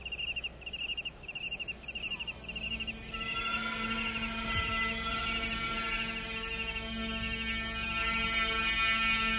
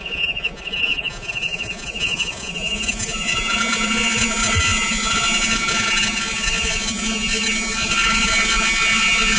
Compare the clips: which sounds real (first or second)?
first